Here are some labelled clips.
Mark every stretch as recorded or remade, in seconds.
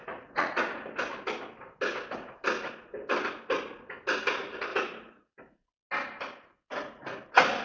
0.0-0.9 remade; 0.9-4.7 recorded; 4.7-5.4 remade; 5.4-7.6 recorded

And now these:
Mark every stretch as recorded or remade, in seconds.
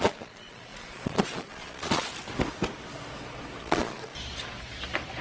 0.0-2.1 remade; 2.1-3.6 recorded; 3.6-4.1 remade; 4.1-5.2 recorded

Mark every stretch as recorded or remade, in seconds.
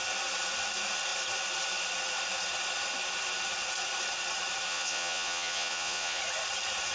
0.0-4.7 recorded; 4.7-6.2 remade; 6.2-6.9 recorded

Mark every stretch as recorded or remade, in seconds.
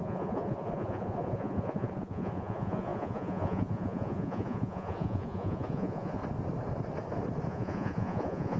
0.0-6.2 remade; 6.2-7.5 recorded; 7.5-8.6 remade